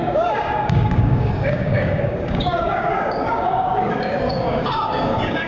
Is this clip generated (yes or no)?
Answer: yes